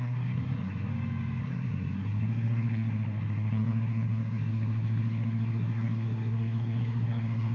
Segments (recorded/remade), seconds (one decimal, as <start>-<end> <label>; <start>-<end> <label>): 0.0-0.9 remade; 0.9-1.4 recorded; 1.4-7.5 remade